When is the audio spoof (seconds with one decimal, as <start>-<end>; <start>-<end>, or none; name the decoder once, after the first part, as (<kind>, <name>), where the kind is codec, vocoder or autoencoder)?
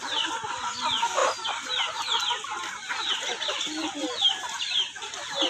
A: none